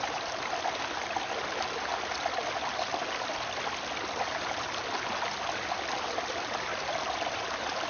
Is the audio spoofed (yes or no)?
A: no